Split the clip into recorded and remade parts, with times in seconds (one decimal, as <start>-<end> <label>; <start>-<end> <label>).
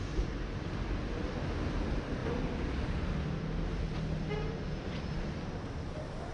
0.0-6.3 recorded